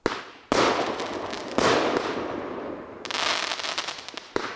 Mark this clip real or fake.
real